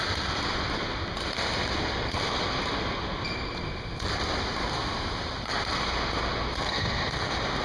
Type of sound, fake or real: real